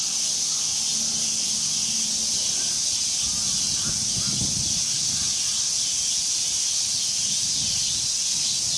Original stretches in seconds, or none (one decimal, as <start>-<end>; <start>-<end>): 0.0-8.8